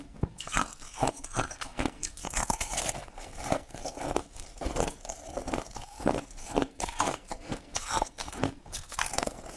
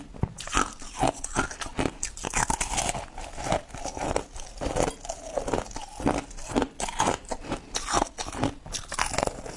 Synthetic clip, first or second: first